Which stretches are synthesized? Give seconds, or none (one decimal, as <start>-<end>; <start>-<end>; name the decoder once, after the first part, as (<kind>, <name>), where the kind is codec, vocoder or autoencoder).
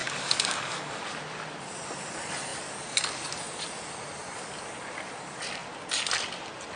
0.0-1.0 (codec, DAC)